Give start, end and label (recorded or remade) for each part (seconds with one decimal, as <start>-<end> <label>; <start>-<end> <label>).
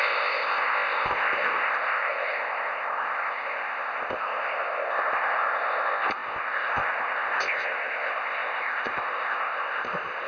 0.0-10.3 remade